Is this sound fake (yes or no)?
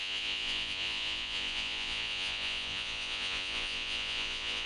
yes